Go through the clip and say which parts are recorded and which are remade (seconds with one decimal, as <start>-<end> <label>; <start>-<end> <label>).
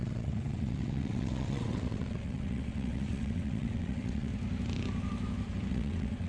0.0-4.3 remade; 4.3-5.7 recorded; 5.7-6.3 remade